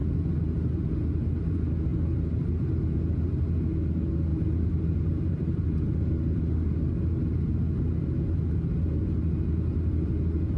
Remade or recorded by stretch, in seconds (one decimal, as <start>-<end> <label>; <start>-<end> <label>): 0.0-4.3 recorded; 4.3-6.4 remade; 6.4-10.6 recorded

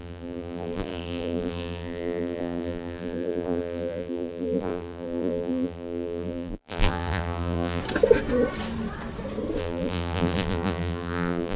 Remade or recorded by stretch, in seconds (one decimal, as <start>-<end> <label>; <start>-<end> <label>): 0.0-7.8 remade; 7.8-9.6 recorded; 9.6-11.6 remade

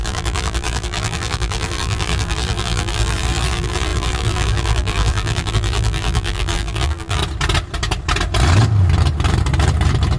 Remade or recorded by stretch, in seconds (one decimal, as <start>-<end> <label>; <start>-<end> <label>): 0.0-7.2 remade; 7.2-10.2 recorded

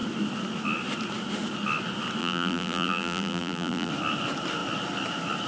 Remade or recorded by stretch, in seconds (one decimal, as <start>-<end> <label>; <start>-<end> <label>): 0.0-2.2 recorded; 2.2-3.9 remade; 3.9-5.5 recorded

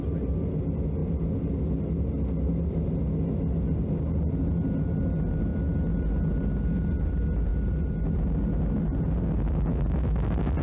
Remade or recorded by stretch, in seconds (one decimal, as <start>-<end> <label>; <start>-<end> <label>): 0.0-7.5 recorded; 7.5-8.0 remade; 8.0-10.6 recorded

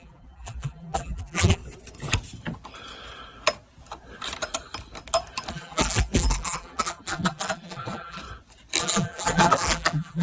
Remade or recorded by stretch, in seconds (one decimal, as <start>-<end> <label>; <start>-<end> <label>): 0.0-1.6 remade; 1.6-5.5 recorded; 5.5-8.2 remade; 8.2-8.8 recorded; 8.8-10.2 remade

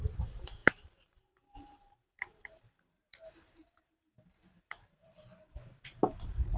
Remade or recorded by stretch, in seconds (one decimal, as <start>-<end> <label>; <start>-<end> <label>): 0.0-6.6 remade

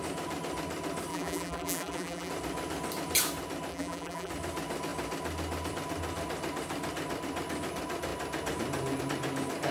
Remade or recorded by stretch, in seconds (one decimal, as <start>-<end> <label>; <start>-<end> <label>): 0.0-1.1 recorded; 1.1-2.3 remade; 2.3-3.7 recorded; 3.7-4.3 remade; 4.3-9.7 recorded